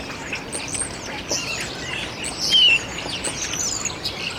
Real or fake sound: real